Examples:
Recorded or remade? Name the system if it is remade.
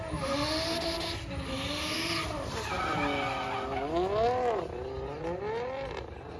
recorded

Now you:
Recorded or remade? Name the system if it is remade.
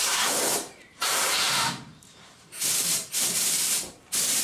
remade, vocoder, BigVGAN v2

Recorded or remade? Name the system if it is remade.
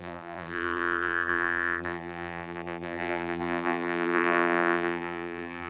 remade, vocoder, BigVGAN v2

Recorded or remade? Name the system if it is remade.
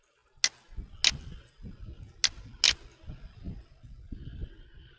recorded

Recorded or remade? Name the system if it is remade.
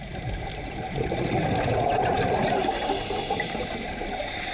remade, vocoder, BigVGAN v2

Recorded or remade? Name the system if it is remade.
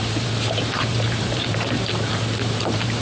remade, vocoder, BigVGAN v2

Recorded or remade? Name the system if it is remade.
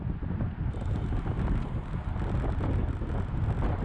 recorded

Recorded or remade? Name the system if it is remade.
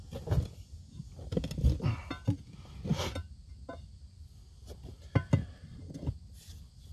recorded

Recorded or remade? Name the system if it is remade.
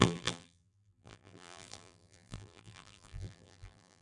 remade, vocoder, BigVGAN v2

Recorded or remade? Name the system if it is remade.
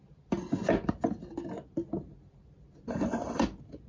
recorded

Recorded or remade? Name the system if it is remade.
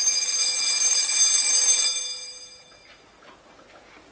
recorded